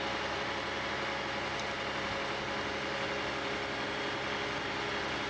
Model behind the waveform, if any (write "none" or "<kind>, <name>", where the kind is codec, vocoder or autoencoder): none